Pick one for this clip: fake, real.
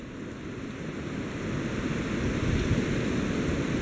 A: real